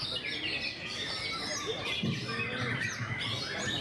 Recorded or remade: recorded